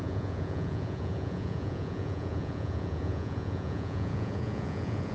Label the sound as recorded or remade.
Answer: remade